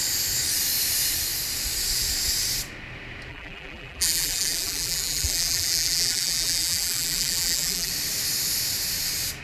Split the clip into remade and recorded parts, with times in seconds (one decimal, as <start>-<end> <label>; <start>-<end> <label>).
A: 0.0-3.3 recorded; 3.3-7.9 remade; 7.9-9.4 recorded